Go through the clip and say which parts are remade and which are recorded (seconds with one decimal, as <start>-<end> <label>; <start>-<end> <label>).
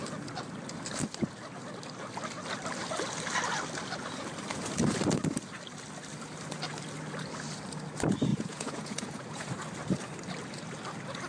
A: 0.0-8.3 recorded; 8.3-9.5 remade; 9.5-11.3 recorded